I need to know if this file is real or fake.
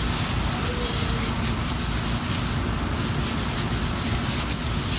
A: real